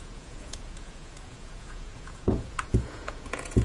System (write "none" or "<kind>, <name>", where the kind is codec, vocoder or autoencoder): vocoder, Vocos